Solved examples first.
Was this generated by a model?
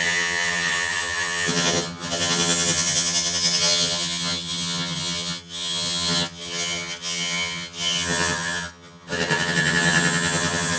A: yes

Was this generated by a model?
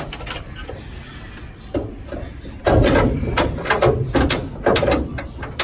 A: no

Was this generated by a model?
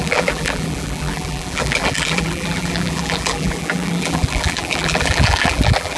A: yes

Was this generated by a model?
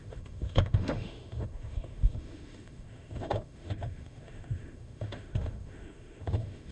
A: yes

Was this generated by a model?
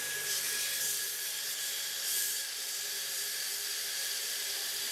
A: yes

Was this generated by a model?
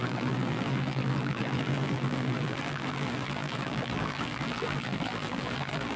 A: yes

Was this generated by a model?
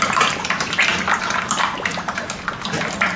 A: no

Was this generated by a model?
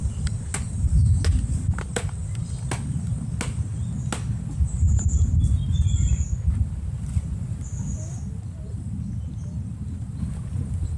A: no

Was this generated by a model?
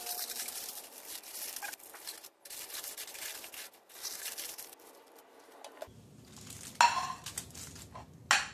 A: no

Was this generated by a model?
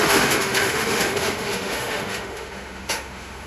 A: yes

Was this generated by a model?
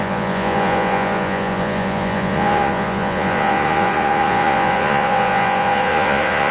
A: yes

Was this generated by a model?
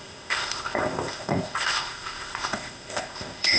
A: yes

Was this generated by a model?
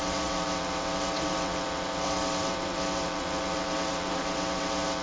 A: yes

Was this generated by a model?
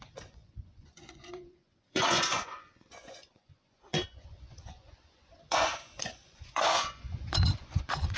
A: yes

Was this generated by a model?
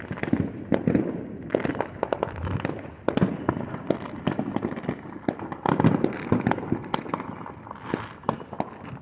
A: no